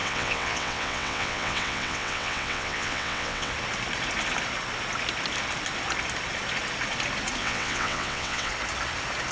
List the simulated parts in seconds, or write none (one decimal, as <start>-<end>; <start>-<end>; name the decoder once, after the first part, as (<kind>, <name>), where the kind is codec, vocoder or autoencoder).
0.0-3.5 (vocoder, WaveNeXt); 7.4-8.5